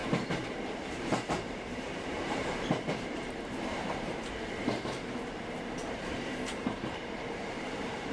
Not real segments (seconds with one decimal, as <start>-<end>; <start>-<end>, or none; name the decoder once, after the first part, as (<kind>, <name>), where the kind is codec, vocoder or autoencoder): 0.0-8.1 (vocoder, BigVGAN v2)